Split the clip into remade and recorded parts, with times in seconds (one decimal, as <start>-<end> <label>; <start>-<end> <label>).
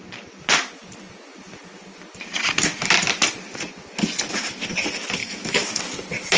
0.0-5.2 recorded; 5.2-5.8 remade; 5.8-6.4 recorded